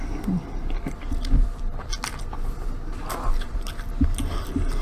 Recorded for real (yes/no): yes